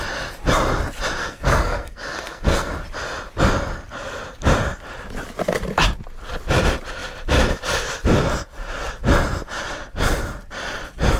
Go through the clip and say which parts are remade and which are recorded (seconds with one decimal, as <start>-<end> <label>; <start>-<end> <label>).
0.0-1.2 recorded; 1.2-2.7 remade; 2.7-11.2 recorded